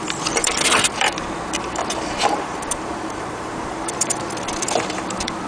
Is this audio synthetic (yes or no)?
yes